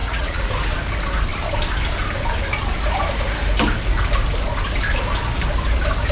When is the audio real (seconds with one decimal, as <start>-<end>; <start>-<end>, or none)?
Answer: 0.5-6.1